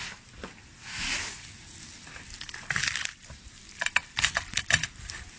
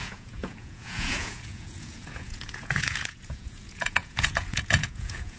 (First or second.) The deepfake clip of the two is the second